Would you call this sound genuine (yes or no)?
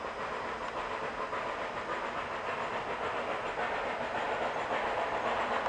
yes